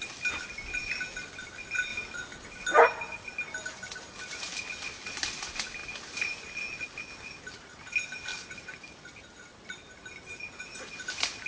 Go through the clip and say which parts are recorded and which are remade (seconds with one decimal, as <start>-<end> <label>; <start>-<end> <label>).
0.0-11.5 recorded